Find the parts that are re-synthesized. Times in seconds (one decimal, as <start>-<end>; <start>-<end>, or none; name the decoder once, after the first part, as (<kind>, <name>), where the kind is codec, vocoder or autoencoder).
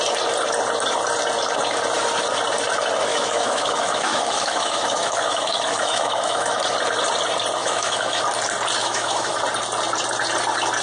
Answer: 3.1-6.6 (autoencoder, DAC-VAE); 7.6-8.2; 8.8-9.4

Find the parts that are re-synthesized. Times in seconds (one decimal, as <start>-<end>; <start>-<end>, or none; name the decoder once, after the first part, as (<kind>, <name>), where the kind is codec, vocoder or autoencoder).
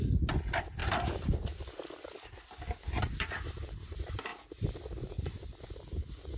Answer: none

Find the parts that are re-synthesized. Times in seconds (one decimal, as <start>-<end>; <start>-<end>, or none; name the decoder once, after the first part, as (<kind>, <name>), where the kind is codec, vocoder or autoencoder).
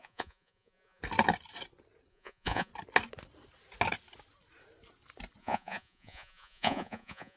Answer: 0.0-1.0 (vocoder, Vocos); 2.1-2.7; 5.4-7.4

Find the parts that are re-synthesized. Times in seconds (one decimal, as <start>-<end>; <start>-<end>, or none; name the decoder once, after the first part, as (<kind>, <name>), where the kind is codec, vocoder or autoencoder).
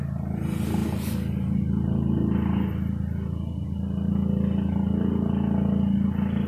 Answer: none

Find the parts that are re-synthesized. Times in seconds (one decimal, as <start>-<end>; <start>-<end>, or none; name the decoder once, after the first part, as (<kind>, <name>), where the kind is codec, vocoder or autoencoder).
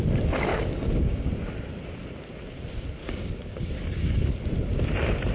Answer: 0.5-1.3 (codec, DAC); 3.0-4.3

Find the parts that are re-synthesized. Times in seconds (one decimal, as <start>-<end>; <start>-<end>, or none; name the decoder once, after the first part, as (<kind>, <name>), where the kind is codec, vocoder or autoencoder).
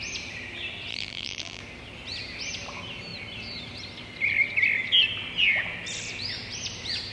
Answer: 0.9-1.6 (vocoder, BigVGAN v2)